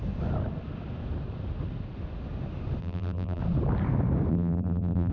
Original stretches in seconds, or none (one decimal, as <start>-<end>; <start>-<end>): 0.0-2.8; 3.4-4.3

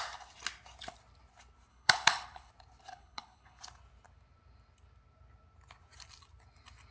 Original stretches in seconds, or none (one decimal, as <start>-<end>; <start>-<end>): 0.0-1.7; 2.5-2.9; 3.6-6.9

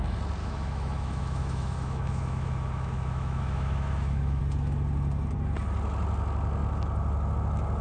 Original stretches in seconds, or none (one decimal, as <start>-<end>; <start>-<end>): 0.0-0.4; 4.4-7.8

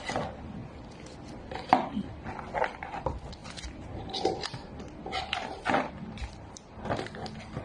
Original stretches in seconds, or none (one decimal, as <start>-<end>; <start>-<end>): none

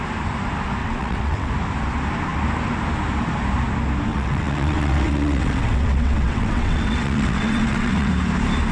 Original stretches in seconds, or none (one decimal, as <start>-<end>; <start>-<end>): 0.0-0.8; 1.5-4.1; 8.1-8.7

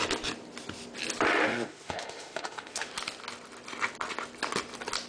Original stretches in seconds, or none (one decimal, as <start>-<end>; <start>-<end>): 0.0-1.5; 2.9-5.1

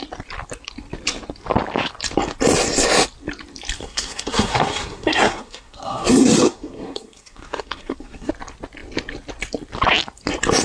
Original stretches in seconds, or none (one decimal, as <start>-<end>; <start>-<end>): 0.0-3.8; 8.3-10.6